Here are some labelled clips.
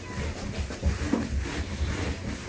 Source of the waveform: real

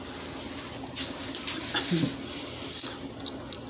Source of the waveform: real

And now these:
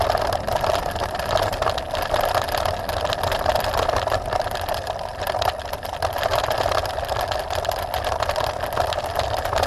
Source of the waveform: real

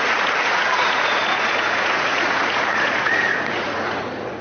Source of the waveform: fake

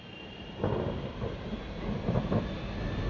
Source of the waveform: real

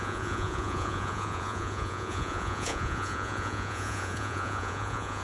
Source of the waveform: fake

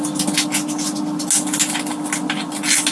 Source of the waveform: real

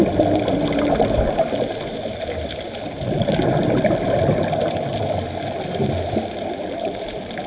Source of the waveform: real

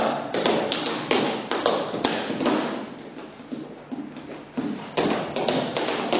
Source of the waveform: real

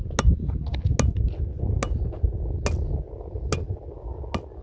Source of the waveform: real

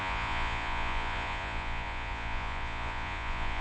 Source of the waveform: fake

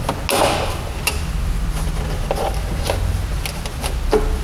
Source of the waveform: real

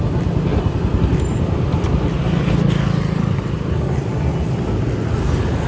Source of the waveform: real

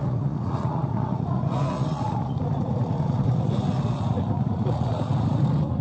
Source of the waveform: fake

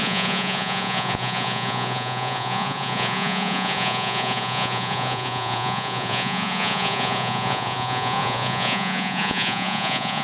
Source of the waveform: fake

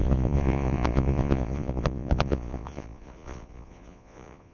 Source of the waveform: fake